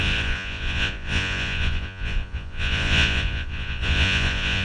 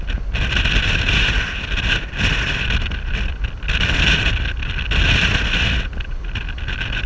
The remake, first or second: first